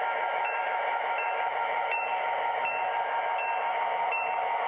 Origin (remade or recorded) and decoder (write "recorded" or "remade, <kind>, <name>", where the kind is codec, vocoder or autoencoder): remade, autoencoder, DAC-VAE